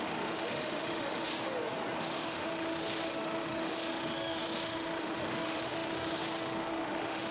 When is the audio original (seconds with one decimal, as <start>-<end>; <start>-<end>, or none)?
1.3-2.0